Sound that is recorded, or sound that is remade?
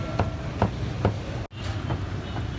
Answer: recorded